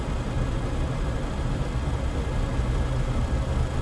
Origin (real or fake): real